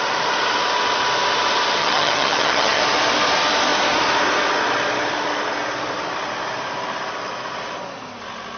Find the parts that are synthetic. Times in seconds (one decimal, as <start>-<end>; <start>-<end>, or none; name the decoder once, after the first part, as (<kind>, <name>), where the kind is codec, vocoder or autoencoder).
1.8-2.8 (vocoder, HiFi-GAN)